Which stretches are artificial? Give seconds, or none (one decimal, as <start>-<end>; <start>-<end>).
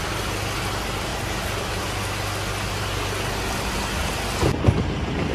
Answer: 1.1-1.8